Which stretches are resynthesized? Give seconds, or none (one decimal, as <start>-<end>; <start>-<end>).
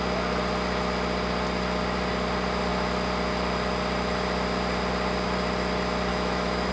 6.1-6.7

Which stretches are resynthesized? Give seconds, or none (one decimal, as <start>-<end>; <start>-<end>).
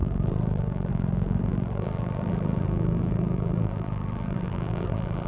0.0-5.3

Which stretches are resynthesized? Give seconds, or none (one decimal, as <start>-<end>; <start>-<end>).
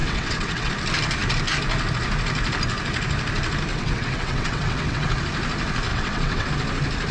0.0-0.7; 3.7-5.1; 5.9-6.5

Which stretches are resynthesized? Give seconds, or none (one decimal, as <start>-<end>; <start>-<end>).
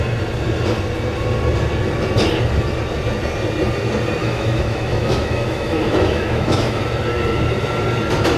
4.2-6.8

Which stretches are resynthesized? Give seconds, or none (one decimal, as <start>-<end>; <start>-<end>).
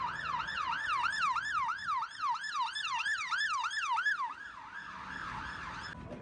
1.7-2.5